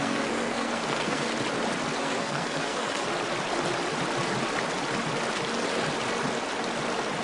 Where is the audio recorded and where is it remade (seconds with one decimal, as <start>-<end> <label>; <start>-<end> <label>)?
0.0-1.3 remade; 1.3-2.0 recorded; 2.0-3.1 remade; 3.1-7.2 recorded